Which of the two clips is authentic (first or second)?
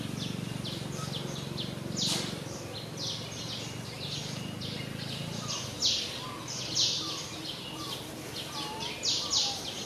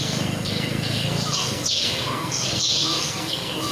first